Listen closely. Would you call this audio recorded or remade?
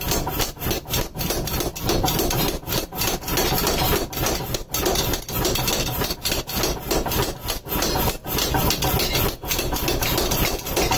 recorded